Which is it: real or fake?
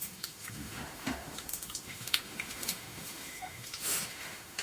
fake